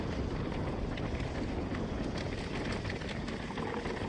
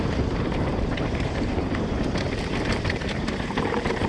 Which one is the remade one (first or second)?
second